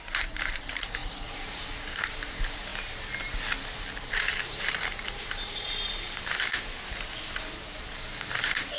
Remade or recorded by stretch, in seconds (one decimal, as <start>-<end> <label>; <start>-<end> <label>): 0.0-2.7 remade; 2.7-4.1 recorded; 4.1-6.5 remade; 6.5-7.8 recorded; 7.8-8.8 remade

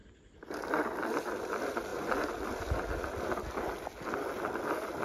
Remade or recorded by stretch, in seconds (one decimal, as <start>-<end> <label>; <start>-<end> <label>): 0.0-0.7 remade; 0.7-5.0 recorded

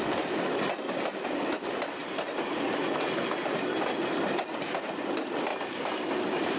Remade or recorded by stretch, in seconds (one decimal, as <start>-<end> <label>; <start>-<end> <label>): 0.0-5.5 recorded; 5.5-6.6 remade

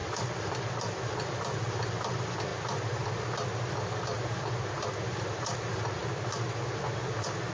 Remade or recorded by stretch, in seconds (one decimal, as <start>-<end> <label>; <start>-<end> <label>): 0.0-2.5 remade; 2.5-5.2 recorded; 5.2-6.0 remade; 6.0-7.5 recorded

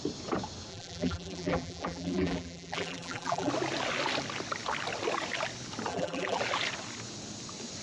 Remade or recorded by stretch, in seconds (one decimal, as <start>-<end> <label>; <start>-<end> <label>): 0.0-0.7 recorded; 0.7-3.5 remade; 3.5-5.9 recorded; 5.9-6.4 remade; 6.4-7.8 recorded

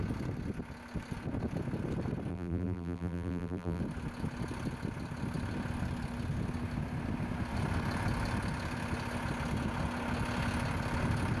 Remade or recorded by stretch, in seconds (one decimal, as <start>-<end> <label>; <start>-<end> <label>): 0.0-2.3 recorded; 2.3-3.8 remade; 3.8-11.4 recorded